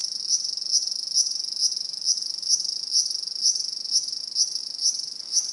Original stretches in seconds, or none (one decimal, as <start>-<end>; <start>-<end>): 0.0-5.5